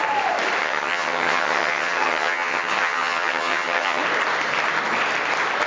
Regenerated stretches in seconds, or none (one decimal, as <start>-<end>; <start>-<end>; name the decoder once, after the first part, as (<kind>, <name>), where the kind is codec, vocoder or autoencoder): 0.6-4.0 (vocoder, HiFi-GAN)